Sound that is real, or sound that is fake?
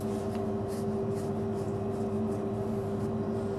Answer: real